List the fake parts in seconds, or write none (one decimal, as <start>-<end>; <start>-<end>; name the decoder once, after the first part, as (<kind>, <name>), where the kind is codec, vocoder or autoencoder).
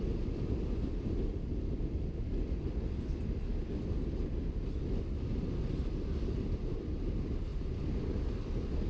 none